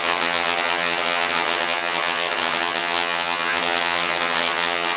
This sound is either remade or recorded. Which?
remade